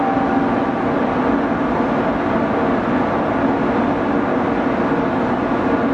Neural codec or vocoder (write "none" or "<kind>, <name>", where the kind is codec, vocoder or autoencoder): none